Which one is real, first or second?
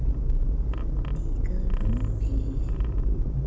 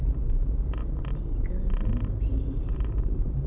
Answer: first